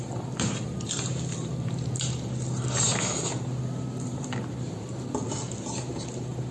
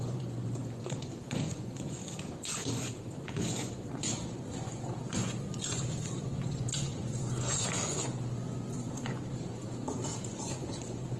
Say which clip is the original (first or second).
first